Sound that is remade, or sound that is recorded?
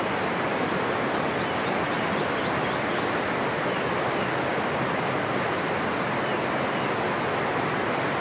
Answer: recorded